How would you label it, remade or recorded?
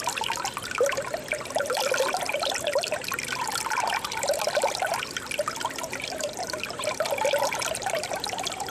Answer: recorded